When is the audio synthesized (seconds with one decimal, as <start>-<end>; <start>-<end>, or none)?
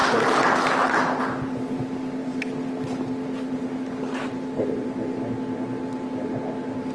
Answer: none